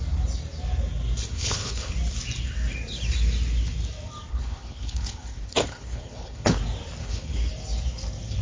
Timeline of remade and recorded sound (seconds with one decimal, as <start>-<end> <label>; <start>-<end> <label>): 0.0-1.2 recorded; 1.2-1.9 remade; 1.9-4.3 recorded; 4.3-6.6 remade; 6.6-7.0 recorded; 7.0-7.5 remade; 7.5-8.4 recorded